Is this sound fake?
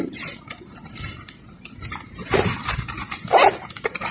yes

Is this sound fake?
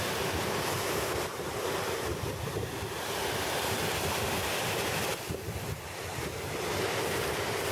yes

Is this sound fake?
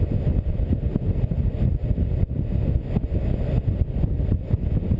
no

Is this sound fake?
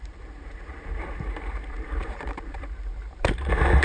yes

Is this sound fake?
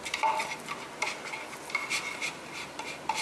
no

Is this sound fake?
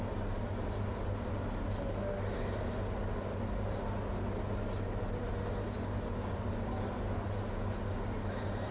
no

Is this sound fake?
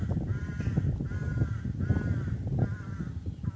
no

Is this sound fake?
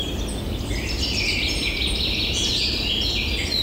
no